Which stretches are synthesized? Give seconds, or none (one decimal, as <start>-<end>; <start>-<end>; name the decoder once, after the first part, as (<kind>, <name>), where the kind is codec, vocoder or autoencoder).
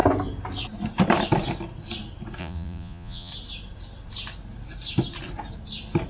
2.4-3.3 (vocoder, Vocos)